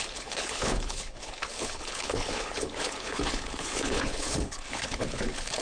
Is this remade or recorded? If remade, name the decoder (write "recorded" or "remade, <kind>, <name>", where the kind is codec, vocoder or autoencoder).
remade, codec, HILCodec